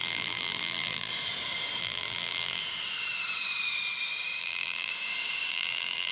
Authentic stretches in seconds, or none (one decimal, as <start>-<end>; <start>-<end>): 1.1-1.8; 2.6-4.4; 4.9-5.5